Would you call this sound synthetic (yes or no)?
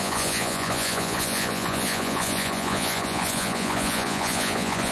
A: yes